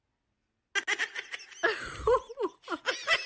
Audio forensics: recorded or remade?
recorded